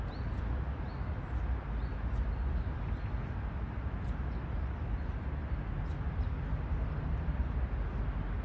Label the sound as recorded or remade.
recorded